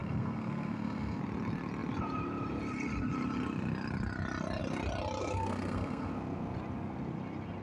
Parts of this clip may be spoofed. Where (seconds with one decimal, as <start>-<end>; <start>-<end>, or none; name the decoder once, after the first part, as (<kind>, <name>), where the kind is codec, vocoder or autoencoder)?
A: 0.0-1.2 (codec, SNAC); 5.2-6.1